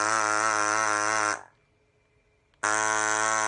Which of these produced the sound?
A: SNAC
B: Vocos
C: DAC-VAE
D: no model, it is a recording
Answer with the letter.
D